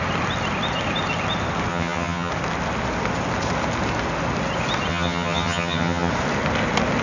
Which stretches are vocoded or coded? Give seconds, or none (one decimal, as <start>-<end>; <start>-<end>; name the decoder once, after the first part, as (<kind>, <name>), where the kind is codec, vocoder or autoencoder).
1.7-2.3 (vocoder, HiFi-GAN); 4.9-6.1